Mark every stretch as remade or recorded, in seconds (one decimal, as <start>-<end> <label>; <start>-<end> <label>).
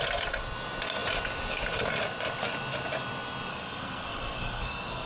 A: 0.0-3.5 recorded; 3.5-5.1 remade